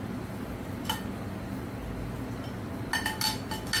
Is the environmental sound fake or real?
real